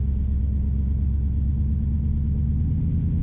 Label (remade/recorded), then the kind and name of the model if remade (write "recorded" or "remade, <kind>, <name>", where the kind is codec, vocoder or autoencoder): recorded